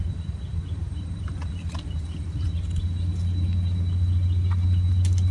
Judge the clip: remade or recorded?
recorded